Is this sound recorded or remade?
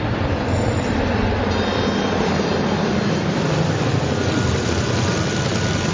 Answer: remade